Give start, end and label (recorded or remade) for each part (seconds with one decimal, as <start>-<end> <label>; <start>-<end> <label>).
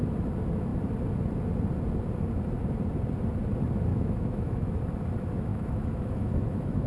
0.0-3.9 recorded; 3.9-4.8 remade; 4.8-5.5 recorded; 5.5-6.9 remade